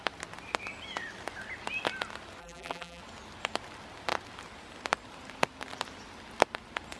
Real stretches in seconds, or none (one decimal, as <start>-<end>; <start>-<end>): 0.0-2.4; 3.0-7.0